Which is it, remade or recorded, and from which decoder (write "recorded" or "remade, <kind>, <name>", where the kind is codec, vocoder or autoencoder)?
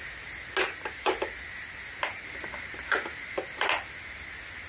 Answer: recorded